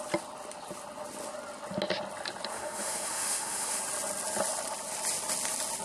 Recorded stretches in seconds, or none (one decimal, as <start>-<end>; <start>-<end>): 0.0-2.5; 3.8-5.8